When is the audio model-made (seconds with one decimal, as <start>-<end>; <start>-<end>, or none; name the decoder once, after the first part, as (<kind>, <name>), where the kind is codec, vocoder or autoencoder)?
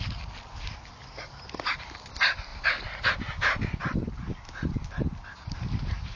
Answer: none